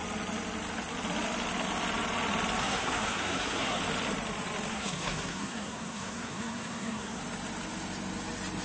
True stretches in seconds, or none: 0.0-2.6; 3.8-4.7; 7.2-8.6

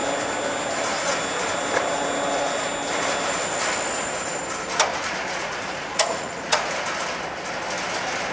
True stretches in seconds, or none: 0.0-4.9; 6.7-8.3